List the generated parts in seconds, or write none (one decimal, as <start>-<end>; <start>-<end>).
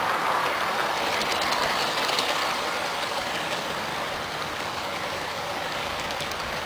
0.0-0.4; 2.0-2.4; 3.1-3.9; 4.4-6.7